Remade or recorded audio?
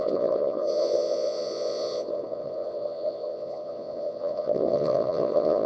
remade